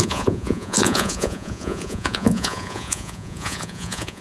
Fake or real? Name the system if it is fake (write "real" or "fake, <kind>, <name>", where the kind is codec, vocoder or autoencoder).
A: fake, vocoder, Vocos